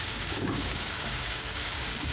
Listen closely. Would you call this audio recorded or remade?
remade